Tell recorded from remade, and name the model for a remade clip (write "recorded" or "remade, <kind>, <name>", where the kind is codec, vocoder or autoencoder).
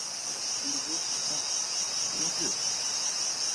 recorded